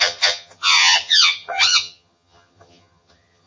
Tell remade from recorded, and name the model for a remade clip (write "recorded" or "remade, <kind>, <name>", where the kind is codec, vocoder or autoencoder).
remade, vocoder, HiFi-GAN